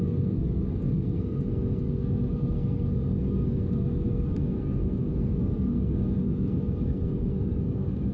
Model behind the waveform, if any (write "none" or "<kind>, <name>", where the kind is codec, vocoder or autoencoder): codec, SNAC